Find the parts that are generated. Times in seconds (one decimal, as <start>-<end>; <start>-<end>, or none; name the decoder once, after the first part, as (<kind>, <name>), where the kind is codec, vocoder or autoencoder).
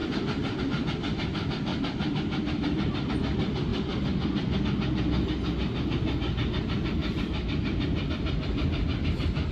0.0-0.6 (vocoder, BigVGAN v2); 1.7-3.1; 3.7-4.6; 7.0-8.1